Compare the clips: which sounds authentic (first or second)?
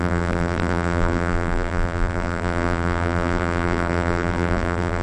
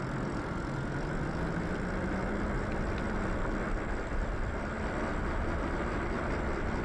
second